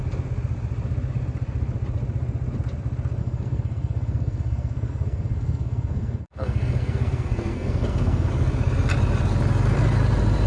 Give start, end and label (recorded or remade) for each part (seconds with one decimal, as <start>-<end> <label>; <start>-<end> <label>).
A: 0.0-3.2 recorded; 3.2-8.3 remade; 8.3-10.5 recorded